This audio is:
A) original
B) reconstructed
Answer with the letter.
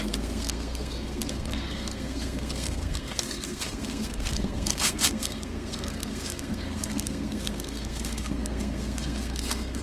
B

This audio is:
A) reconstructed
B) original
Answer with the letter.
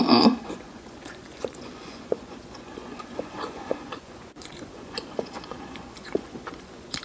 A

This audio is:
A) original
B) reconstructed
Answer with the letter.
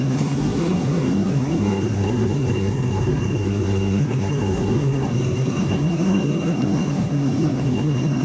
B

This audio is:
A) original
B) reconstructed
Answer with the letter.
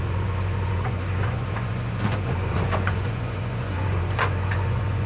B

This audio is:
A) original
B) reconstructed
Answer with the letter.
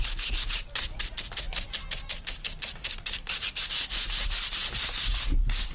A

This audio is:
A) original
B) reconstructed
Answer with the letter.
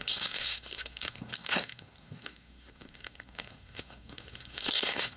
B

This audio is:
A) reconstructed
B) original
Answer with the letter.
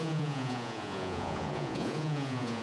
A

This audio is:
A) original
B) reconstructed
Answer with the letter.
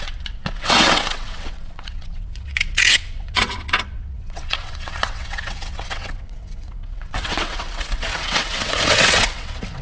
B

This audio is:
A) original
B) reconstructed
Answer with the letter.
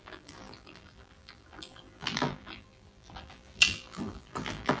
B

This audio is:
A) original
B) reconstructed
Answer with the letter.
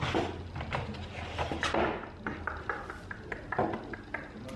A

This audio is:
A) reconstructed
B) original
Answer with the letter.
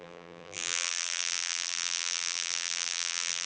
A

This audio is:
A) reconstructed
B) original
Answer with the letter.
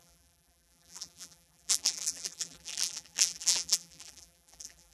A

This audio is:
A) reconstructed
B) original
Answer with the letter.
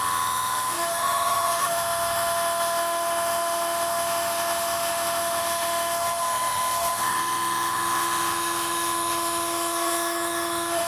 A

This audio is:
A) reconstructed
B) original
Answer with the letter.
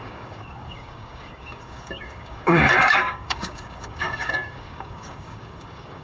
A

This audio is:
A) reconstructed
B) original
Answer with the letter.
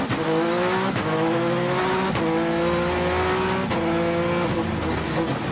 B